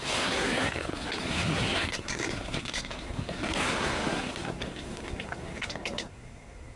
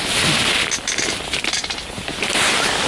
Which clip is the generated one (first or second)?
first